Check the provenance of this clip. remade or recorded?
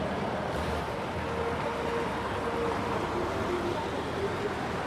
recorded